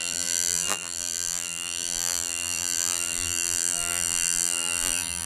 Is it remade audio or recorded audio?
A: remade